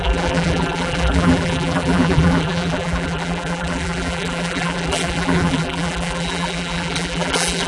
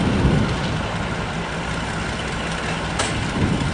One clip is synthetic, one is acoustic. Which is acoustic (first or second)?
second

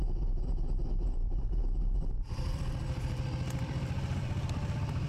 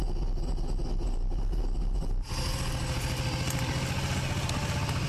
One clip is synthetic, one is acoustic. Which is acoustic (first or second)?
second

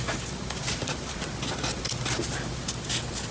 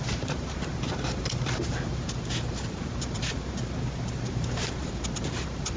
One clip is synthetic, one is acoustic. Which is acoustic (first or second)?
first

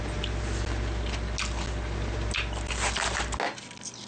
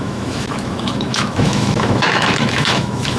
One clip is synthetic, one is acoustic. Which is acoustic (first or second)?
first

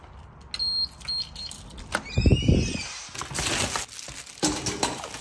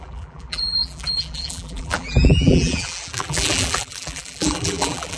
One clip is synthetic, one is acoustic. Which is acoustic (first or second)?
first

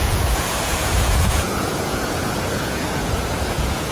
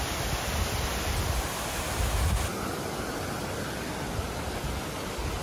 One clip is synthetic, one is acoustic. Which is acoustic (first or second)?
second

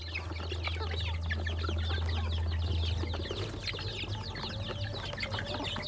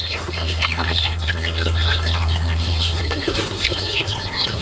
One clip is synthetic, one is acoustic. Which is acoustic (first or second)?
first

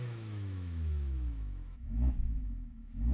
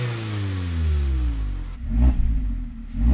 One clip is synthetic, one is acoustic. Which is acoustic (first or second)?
second